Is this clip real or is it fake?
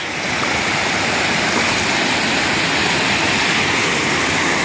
fake